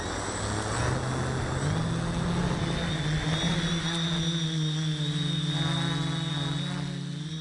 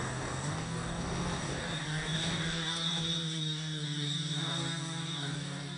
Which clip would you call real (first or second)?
first